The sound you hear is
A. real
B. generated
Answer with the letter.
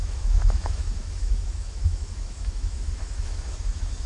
B